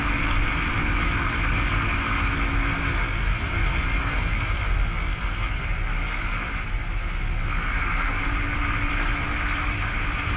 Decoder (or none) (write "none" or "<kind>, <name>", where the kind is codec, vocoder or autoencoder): none